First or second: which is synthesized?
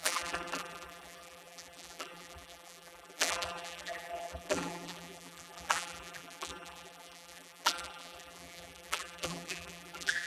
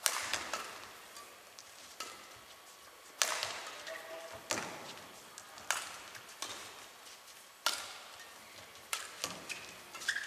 first